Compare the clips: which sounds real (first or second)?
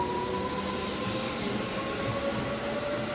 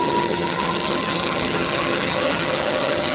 first